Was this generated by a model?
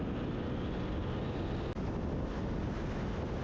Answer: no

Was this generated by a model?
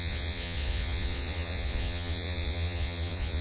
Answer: yes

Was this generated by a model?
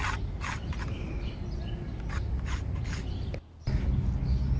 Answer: no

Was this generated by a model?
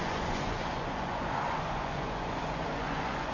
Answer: yes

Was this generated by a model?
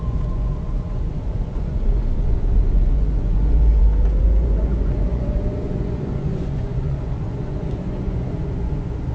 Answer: yes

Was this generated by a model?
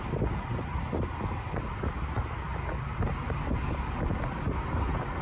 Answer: no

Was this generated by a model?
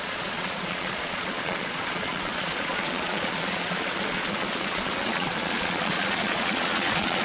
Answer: yes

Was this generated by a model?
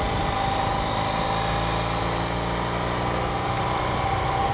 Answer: no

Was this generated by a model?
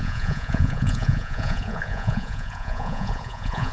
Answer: yes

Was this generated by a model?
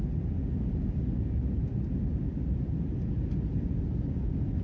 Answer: no